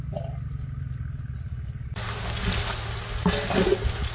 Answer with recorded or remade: recorded